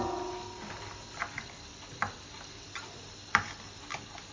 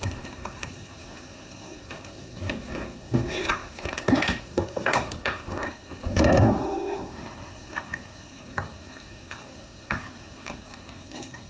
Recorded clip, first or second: first